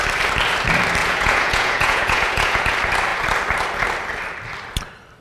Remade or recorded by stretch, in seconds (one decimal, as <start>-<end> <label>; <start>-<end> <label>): 0.0-1.0 recorded; 1.0-2.7 remade; 2.7-5.2 recorded